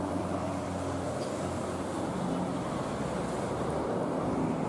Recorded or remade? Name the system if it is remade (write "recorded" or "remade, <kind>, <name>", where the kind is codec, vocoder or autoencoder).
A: remade, vocoder, BigVGAN v2